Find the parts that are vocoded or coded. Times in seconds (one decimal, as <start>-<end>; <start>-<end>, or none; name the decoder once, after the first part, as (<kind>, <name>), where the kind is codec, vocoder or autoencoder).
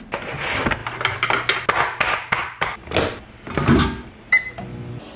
none